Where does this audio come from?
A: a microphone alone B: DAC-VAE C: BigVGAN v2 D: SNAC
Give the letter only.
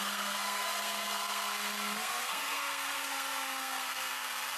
D